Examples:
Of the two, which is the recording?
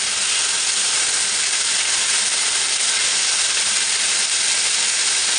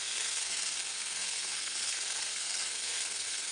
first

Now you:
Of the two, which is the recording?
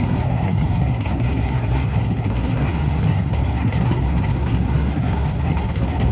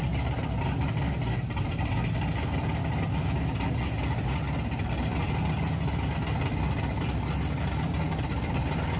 second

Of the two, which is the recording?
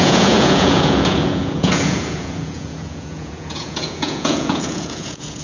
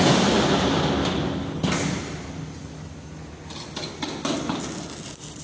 second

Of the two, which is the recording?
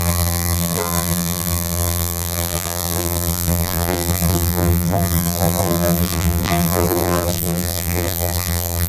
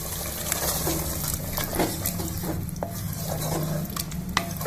second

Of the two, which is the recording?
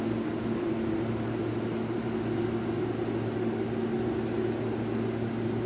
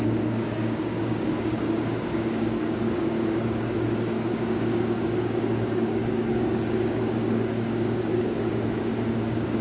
first